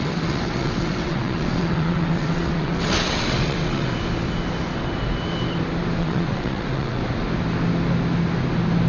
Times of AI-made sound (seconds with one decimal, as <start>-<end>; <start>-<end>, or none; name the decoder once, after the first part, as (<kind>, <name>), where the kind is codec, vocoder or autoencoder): 0.0-3.9 (vocoder, WaveNeXt); 6.0-7.0